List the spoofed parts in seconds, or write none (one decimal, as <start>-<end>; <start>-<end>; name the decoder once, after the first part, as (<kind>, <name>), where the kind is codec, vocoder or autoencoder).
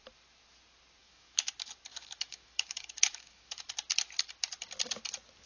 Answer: 1.0-1.5 (autoencoder, DAC-VAE); 1.9-3.7